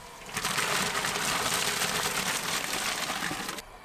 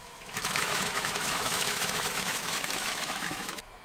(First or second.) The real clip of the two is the first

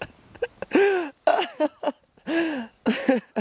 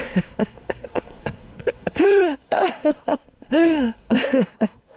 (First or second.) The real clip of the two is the first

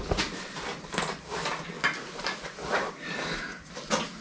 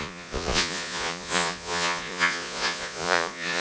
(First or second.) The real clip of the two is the first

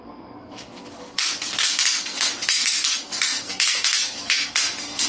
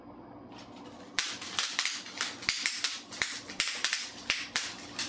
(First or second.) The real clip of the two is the second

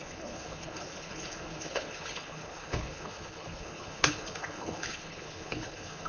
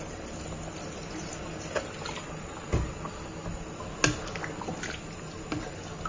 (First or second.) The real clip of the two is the second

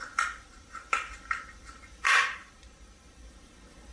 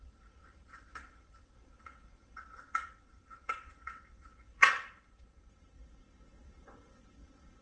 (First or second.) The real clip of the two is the first